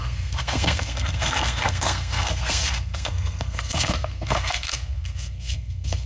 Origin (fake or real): fake